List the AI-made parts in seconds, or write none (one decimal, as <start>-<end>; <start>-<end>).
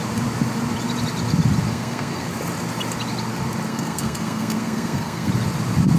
1.7-2.3; 3.7-5.3